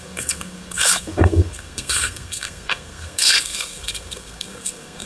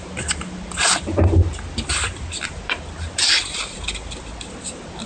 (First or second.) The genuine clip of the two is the second